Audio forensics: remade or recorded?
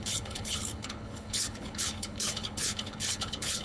remade